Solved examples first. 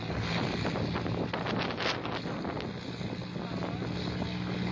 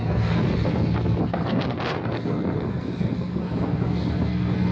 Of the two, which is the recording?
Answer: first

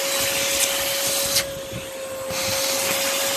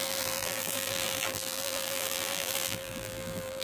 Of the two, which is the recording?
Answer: first